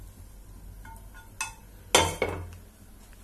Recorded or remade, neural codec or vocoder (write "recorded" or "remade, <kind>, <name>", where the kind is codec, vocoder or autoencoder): recorded